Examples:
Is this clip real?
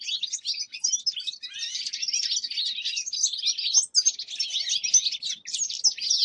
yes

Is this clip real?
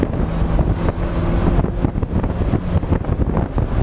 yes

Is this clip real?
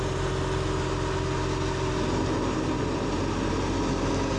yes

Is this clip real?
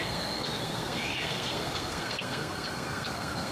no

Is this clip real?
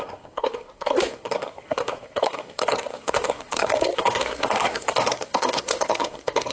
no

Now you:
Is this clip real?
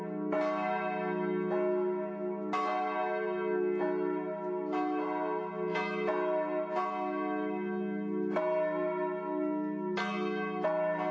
yes